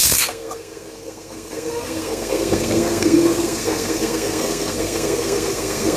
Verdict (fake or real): fake